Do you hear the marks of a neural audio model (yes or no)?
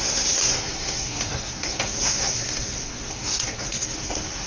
yes